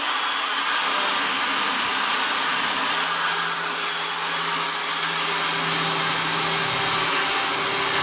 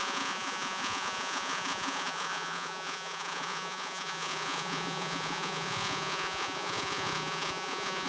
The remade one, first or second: second